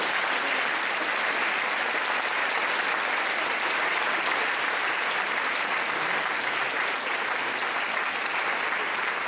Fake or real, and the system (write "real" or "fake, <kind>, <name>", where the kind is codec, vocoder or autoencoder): real